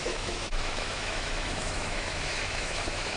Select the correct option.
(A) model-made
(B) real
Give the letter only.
A